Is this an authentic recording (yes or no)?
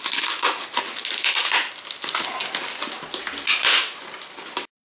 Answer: yes